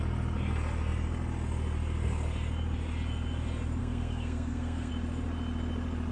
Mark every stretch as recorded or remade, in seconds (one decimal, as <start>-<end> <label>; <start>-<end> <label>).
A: 0.0-3.8 recorded; 3.8-4.9 remade; 4.9-6.1 recorded